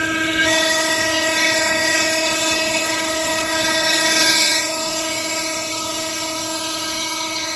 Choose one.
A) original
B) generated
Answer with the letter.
B